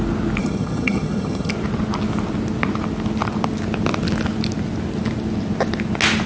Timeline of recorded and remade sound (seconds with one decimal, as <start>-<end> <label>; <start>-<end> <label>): 0.0-0.4 recorded; 0.4-1.5 remade; 1.5-6.3 recorded